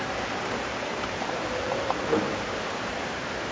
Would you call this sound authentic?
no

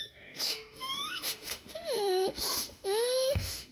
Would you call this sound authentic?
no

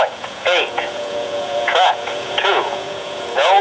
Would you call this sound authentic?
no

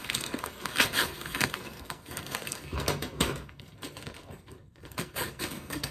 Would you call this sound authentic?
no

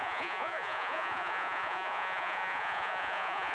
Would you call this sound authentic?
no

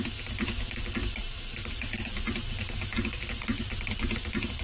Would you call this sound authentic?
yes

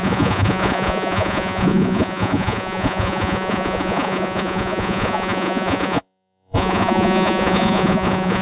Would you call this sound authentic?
no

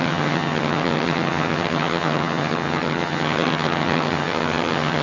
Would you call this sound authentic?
no